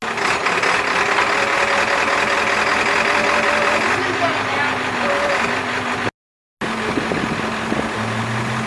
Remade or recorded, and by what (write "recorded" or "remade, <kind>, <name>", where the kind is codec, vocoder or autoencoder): recorded